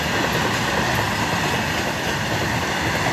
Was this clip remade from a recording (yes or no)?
no